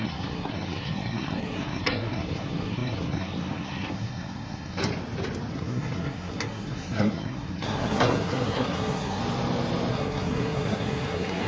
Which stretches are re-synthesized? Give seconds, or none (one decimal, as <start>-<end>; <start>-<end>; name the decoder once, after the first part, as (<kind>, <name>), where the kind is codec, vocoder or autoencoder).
0.0-4.8 (codec, SNAC); 5.5-9.2; 9.9-11.5